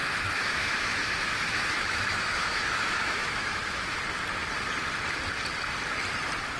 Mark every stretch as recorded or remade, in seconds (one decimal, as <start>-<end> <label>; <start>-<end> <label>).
0.0-4.0 remade; 4.0-6.6 recorded